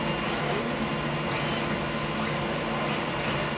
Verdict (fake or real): real